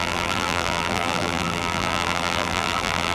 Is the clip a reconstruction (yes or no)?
yes